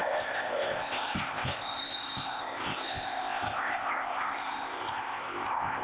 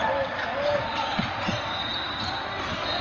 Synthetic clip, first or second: first